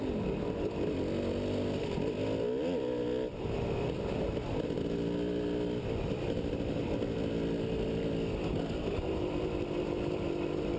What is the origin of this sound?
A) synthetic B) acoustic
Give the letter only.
B